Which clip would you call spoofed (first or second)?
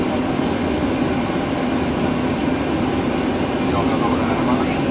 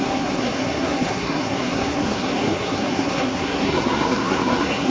second